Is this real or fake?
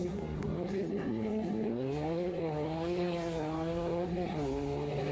fake